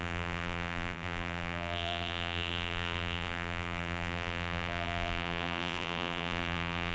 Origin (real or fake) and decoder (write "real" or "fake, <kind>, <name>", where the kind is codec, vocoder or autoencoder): fake, vocoder, BigVGAN v2